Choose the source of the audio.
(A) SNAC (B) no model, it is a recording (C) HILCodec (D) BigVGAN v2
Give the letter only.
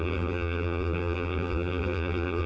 D